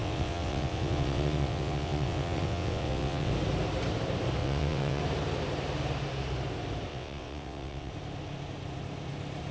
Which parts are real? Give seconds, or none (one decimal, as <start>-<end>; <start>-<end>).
3.3-4.4; 5.0-6.9; 7.9-9.5

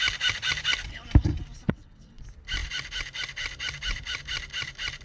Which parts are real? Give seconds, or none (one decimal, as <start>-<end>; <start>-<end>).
0.0-1.6; 2.2-5.0

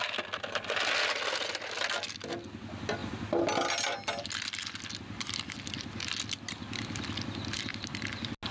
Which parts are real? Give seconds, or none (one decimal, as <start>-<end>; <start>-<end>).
0.0-8.5

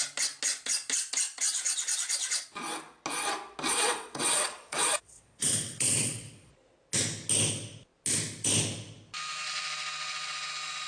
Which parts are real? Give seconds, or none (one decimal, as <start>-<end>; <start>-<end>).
0.0-3.7; 6.5-10.9

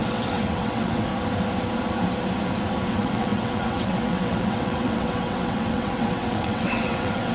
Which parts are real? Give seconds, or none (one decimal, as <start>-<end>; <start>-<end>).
1.1-2.8

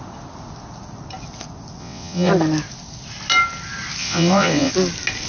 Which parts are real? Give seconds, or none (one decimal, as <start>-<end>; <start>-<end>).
0.0-1.8; 2.3-4.0; 4.7-5.3

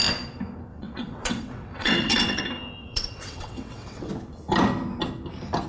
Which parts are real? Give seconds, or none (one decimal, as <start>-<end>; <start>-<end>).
0.0-0.7; 2.4-2.8; 4.1-5.7

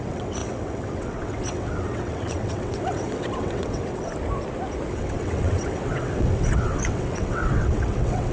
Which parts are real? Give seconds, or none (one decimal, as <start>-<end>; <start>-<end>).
4.1-4.9